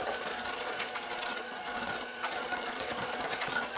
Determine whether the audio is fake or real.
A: fake